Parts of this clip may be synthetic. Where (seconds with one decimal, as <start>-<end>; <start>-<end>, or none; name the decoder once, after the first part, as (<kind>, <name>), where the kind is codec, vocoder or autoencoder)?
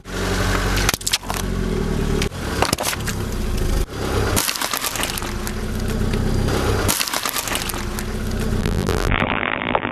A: 8.6-9.9 (vocoder, BigVGAN v2)